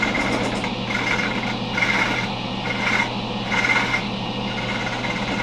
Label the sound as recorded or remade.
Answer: recorded